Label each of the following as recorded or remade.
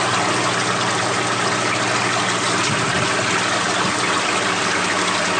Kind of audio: recorded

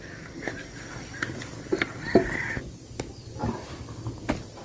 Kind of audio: recorded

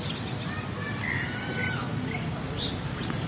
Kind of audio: recorded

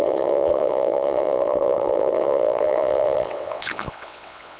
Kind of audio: remade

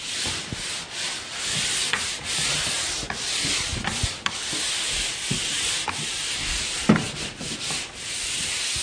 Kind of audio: recorded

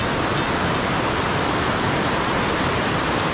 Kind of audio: recorded